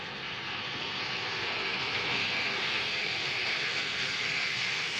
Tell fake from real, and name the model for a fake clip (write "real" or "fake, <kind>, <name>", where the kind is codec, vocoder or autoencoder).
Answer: fake, codec, SNAC